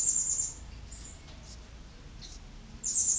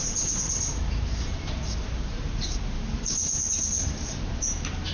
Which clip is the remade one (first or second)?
second